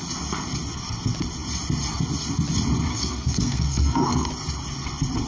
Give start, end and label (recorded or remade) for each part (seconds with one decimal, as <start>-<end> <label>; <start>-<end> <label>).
0.0-2.9 recorded; 2.9-4.3 remade; 4.3-5.3 recorded

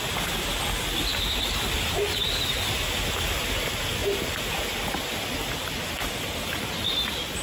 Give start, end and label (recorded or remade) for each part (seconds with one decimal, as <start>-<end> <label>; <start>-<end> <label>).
0.0-1.1 recorded; 1.1-2.8 remade; 2.8-7.4 recorded

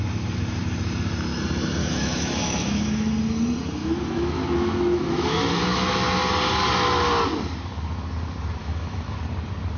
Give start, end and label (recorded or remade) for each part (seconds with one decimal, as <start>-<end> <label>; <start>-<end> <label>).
0.0-1.8 recorded; 1.8-3.1 remade; 3.1-3.8 recorded; 3.8-6.2 remade; 6.2-8.6 recorded; 8.6-9.2 remade; 9.2-9.8 recorded

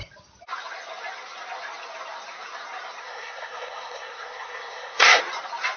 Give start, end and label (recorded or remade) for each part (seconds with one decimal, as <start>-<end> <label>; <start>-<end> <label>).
0.0-3.0 recorded; 3.0-5.2 remade; 5.2-5.8 recorded

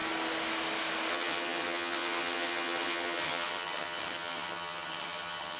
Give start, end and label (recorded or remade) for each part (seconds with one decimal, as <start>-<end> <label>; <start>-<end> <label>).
0.0-1.1 recorded; 1.1-5.6 remade

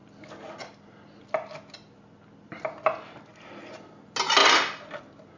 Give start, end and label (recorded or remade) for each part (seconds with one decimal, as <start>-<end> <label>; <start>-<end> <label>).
0.0-5.4 recorded